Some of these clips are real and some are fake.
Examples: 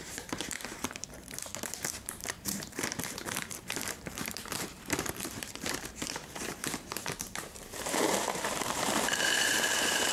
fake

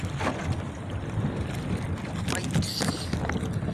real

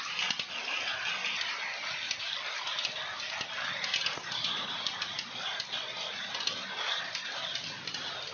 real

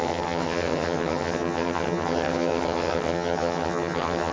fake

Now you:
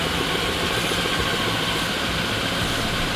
real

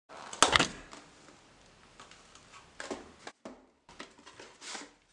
real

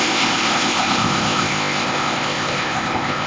fake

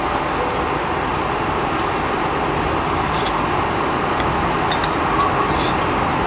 real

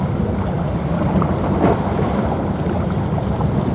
real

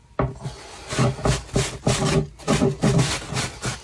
real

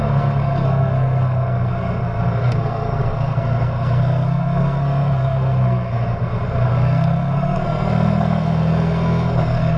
fake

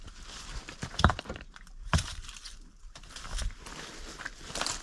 fake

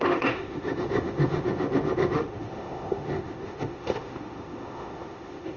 fake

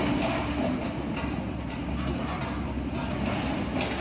real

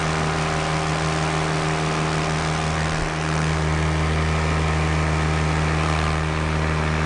real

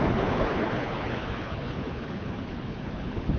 fake